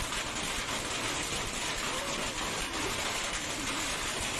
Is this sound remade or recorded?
recorded